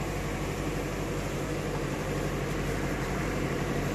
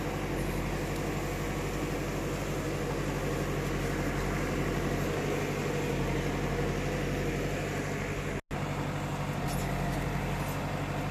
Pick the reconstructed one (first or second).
first